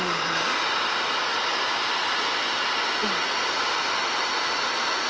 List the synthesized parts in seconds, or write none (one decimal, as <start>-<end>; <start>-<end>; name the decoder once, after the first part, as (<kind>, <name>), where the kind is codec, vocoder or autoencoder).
none